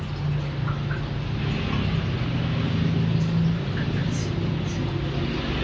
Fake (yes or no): no